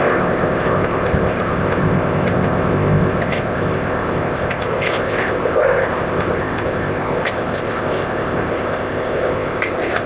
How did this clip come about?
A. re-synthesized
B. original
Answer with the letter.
A